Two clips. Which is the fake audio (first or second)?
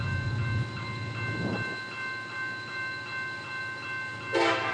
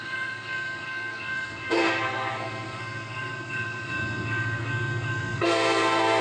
second